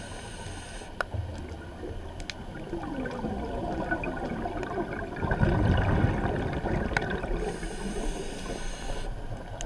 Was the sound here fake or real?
real